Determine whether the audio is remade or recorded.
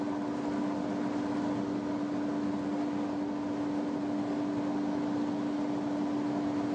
recorded